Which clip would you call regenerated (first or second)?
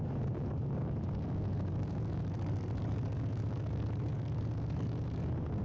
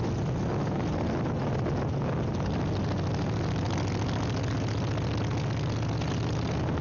first